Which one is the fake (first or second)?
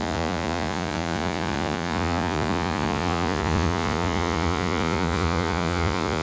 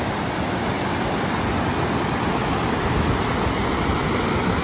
first